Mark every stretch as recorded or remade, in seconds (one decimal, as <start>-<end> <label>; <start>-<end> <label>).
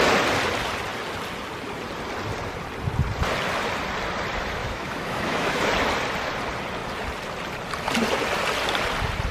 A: 0.0-4.6 recorded; 4.6-5.7 remade; 5.7-9.3 recorded